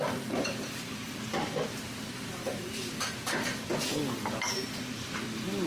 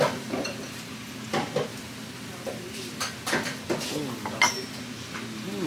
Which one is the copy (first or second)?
first